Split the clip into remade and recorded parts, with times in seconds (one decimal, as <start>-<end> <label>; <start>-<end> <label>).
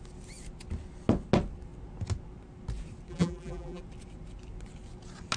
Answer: 0.0-3.1 recorded; 3.1-3.8 remade; 3.8-5.4 recorded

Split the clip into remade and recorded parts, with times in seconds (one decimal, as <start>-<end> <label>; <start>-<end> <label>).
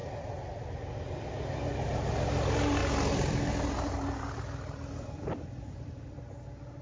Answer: 0.0-2.8 recorded; 2.8-6.8 remade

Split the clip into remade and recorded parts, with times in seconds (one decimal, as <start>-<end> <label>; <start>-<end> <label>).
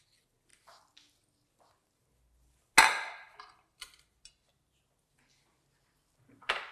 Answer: 0.0-6.7 recorded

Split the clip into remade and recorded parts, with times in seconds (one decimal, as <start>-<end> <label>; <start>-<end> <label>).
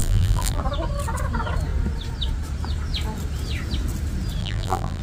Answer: 0.0-0.6 remade; 0.6-4.4 recorded; 4.4-5.0 remade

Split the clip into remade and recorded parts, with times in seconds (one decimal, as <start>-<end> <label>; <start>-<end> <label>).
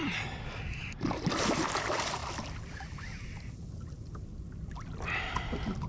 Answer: 0.0-5.9 recorded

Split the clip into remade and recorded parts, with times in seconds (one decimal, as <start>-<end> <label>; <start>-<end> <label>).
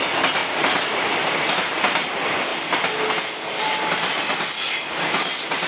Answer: 0.0-0.4 recorded; 0.4-1.5 remade; 1.5-5.7 recorded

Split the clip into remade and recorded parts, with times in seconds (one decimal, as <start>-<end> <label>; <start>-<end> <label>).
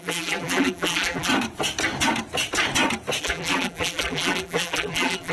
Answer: 0.0-1.3 remade; 1.3-3.2 recorded; 3.2-5.3 remade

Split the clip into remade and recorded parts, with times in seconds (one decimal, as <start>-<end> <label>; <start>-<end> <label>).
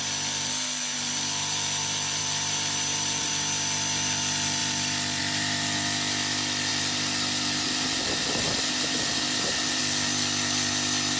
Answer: 0.0-2.2 recorded; 2.2-3.3 remade; 3.3-6.7 recorded; 6.7-9.8 remade; 9.8-11.2 recorded